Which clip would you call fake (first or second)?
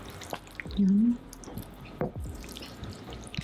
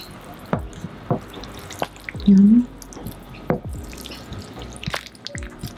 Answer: first